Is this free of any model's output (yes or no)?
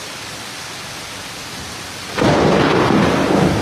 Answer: no